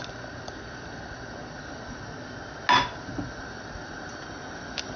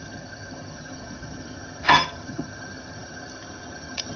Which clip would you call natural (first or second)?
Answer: first